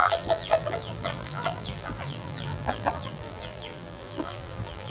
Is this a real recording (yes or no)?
no